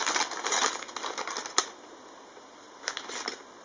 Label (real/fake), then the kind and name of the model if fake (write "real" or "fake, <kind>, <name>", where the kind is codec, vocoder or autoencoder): real